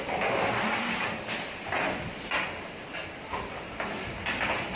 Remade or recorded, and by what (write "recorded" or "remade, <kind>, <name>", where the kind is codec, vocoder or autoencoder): recorded